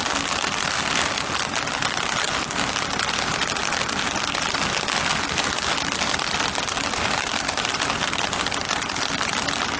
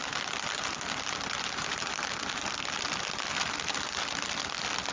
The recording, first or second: first